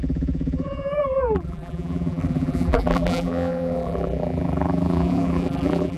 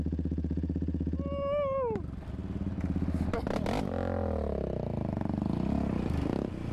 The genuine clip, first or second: second